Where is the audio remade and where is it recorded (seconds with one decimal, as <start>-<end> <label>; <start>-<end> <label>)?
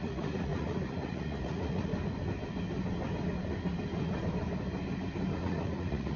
0.0-1.9 remade; 1.9-5.3 recorded; 5.3-6.2 remade